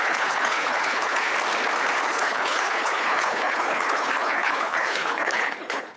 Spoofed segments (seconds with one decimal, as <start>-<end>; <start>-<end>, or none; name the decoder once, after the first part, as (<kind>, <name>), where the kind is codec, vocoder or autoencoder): 0.0-1.3 (codec, HILCodec); 2.1-6.0